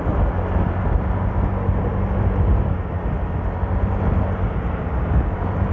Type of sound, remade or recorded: recorded